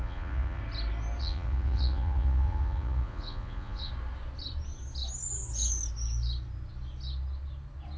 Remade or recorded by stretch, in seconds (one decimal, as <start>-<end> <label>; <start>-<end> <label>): 0.0-0.6 remade; 0.6-1.2 recorded; 1.2-3.9 remade; 3.9-8.0 recorded